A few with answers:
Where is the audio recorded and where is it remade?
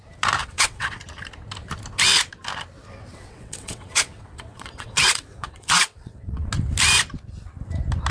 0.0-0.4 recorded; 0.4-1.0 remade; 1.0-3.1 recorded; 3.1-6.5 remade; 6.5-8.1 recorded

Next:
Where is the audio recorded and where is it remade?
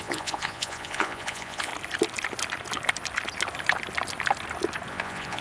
0.0-1.7 remade; 1.7-4.9 recorded; 4.9-5.4 remade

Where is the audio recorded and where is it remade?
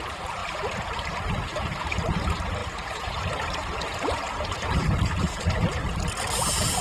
0.0-6.8 recorded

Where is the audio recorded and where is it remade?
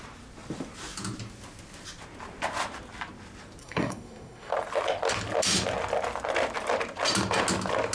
0.0-3.6 recorded; 3.6-4.5 remade; 4.5-7.9 recorded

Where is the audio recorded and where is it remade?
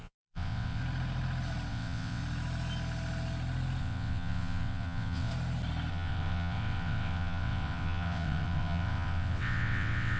0.0-0.8 remade; 0.8-1.7 recorded; 1.7-2.2 remade; 2.2-3.8 recorded; 3.8-5.3 remade; 5.3-5.9 recorded; 5.9-10.2 remade